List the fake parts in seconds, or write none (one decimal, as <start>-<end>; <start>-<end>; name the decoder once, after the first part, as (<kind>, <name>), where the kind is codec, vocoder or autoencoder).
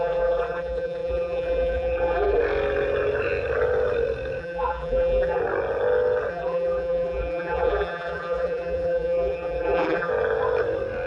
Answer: 0.0-2.4 (vocoder, BigVGAN v2); 4.4-5.4; 6.3-10.1